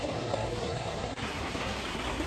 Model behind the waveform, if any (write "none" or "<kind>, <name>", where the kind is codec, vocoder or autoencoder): codec, SNAC